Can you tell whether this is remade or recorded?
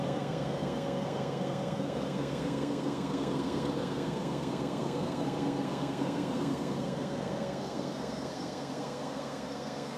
remade